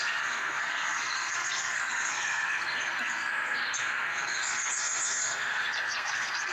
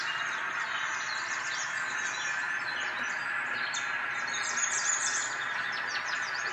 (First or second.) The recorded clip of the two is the second